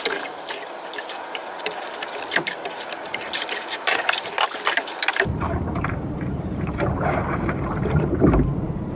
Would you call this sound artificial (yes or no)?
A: yes